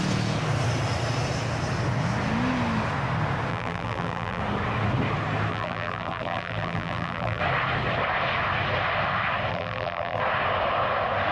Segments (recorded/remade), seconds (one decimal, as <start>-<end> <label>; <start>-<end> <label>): 0.0-3.5 recorded; 3.5-4.4 remade; 4.4-5.5 recorded; 5.5-7.4 remade; 7.4-9.5 recorded; 9.5-10.2 remade; 10.2-11.3 recorded